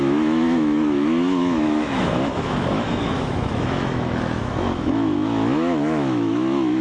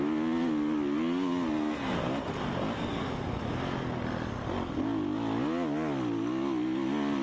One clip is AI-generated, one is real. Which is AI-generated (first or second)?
first